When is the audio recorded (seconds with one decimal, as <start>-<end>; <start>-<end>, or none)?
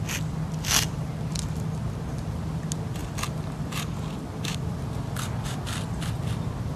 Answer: 0.0-6.8